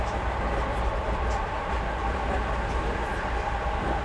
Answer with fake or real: real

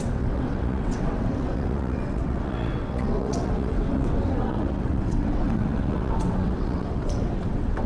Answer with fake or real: fake